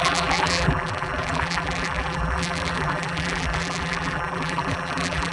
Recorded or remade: remade